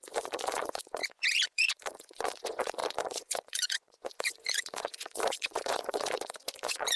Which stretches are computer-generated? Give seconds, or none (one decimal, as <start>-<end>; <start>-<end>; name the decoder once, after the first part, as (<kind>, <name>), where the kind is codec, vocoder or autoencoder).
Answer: 0.0-7.0 (vocoder, Vocos)